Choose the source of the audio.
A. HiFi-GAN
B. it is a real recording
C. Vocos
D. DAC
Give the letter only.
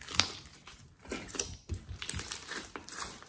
B